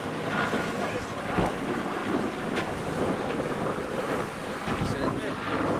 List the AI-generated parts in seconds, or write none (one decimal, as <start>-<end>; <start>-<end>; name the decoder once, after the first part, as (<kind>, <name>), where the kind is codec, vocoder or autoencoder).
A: none